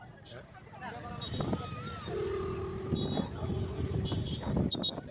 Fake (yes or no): no